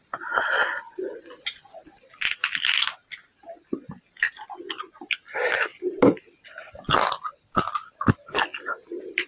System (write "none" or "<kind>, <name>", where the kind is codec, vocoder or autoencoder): none